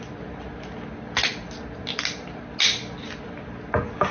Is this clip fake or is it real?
real